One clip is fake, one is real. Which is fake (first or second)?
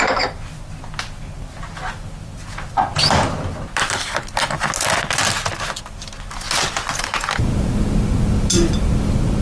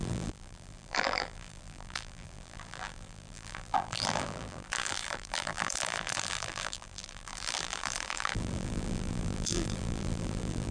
second